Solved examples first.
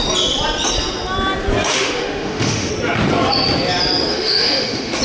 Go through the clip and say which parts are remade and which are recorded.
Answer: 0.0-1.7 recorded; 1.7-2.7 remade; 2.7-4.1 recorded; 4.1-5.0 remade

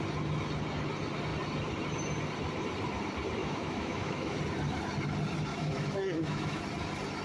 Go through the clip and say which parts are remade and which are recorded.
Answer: 0.0-3.4 recorded; 3.4-4.4 remade; 4.4-5.5 recorded; 5.5-6.6 remade; 6.6-7.2 recorded

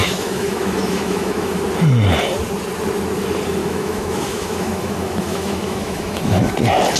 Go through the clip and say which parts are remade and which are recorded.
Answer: 0.0-1.6 remade; 1.6-3.6 recorded; 3.6-6.5 remade; 6.5-7.0 recorded

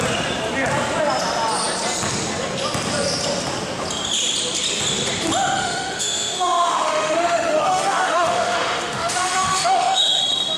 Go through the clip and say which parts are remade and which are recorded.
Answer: 0.0-5.6 recorded; 5.6-10.2 remade; 10.2-10.6 recorded

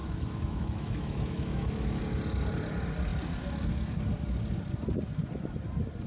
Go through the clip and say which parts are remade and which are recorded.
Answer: 0.0-2.0 remade; 2.0-6.1 recorded

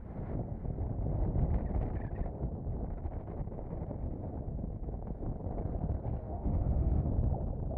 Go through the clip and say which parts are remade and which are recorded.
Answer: 0.0-6.2 recorded; 6.2-7.1 remade; 7.1-7.8 recorded

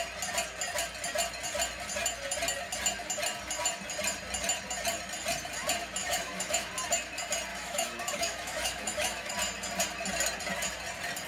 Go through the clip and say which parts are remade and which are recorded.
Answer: 0.0-6.0 recorded; 6.0-6.7 remade; 6.7-7.5 recorded; 7.5-9.3 remade; 9.3-11.3 recorded

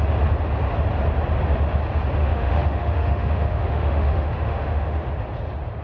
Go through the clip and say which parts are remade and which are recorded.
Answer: 0.0-2.2 recorded; 2.2-5.1 remade; 5.1-5.8 recorded